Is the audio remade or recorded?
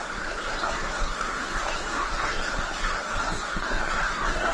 remade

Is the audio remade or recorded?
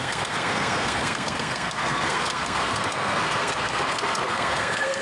remade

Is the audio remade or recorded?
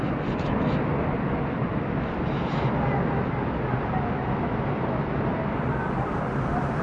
recorded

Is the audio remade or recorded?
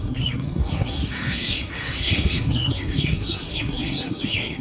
remade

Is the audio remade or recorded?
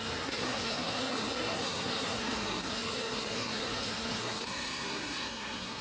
remade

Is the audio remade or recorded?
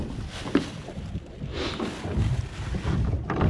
recorded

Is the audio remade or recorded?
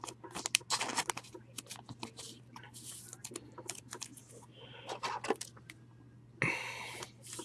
recorded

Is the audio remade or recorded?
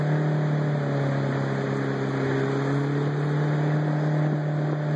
recorded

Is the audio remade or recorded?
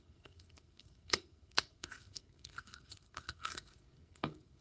remade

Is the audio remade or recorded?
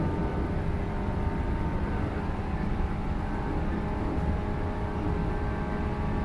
recorded